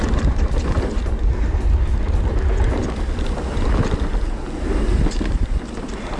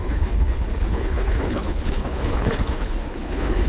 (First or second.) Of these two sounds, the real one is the first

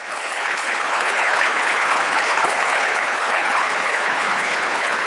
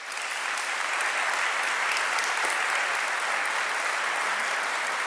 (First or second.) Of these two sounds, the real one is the second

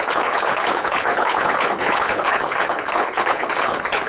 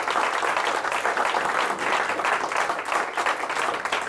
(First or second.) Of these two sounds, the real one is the second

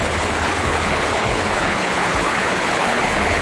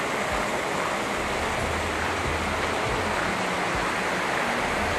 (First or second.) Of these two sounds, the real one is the second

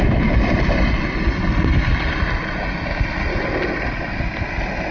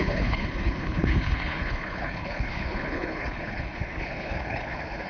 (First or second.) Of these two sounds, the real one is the first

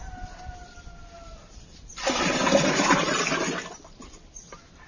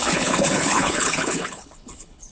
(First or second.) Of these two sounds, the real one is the first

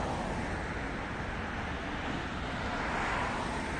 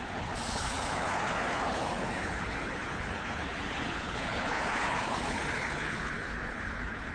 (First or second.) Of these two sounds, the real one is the first